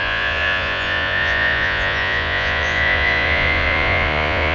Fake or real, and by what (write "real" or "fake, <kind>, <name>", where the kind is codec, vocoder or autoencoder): fake, vocoder, Vocos